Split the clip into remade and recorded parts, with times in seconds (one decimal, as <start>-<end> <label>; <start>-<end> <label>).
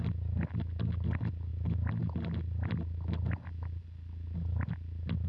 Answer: 0.0-5.3 recorded